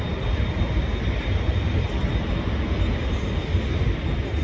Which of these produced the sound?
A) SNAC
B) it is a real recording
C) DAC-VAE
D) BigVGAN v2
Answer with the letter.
B